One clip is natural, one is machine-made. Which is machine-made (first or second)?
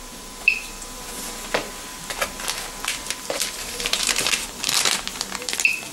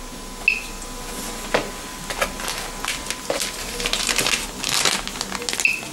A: first